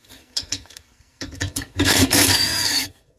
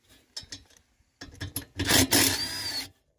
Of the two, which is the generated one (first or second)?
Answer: first